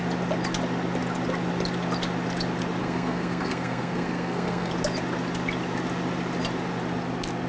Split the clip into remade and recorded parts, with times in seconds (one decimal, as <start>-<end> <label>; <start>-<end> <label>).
0.0-2.8 recorded; 2.8-4.7 remade; 4.7-7.5 recorded